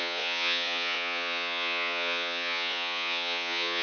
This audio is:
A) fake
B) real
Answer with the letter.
A